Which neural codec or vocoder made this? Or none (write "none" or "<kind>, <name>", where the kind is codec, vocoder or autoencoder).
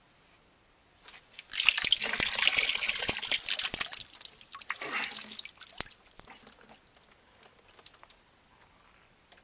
none